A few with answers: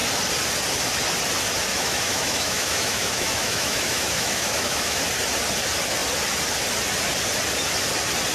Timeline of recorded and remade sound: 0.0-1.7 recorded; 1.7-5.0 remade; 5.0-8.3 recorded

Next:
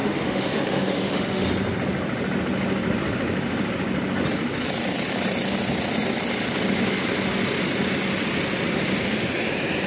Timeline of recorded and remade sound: 0.0-1.5 remade; 1.5-9.9 recorded

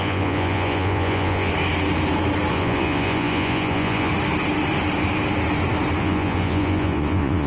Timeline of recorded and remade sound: 0.0-1.5 remade; 1.5-2.5 recorded; 2.5-4.1 remade; 4.1-6.0 recorded; 6.0-7.5 remade

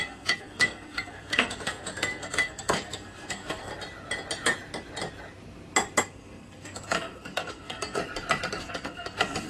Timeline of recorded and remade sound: 0.0-3.7 remade; 3.7-6.0 recorded; 6.0-8.0 remade; 8.0-8.6 recorded; 8.6-9.5 remade

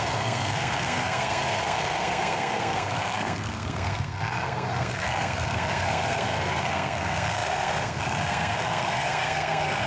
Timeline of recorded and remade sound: 0.0-9.9 remade

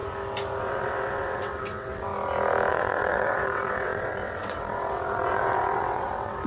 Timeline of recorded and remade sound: 0.0-0.6 recorded; 0.6-2.1 remade; 2.1-2.7 recorded; 2.7-6.5 remade

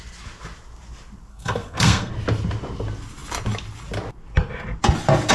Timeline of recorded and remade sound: 0.0-1.3 recorded; 1.3-2.1 remade; 2.1-5.3 recorded

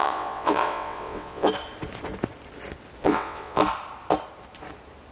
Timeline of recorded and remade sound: 0.0-1.5 remade; 1.5-3.0 recorded; 3.0-3.6 remade; 3.6-5.1 recorded